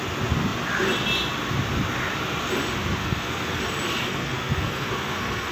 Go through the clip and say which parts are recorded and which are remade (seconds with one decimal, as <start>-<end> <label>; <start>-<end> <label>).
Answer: 0.0-3.0 recorded; 3.0-3.6 remade; 3.6-4.0 recorded; 4.0-5.5 remade